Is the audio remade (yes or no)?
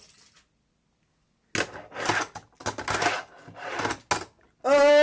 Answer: no